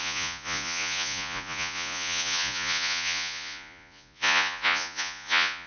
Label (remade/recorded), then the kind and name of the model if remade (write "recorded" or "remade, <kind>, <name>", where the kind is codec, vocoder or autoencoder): remade, vocoder, Vocos